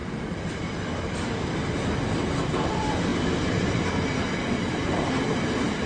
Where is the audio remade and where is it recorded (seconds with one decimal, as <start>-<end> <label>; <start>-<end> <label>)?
0.0-5.9 recorded